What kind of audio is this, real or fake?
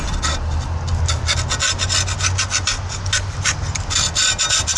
real